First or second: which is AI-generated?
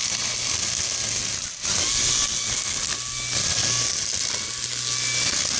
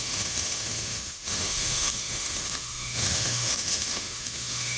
second